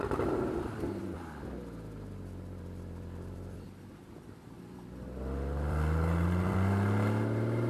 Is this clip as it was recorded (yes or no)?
no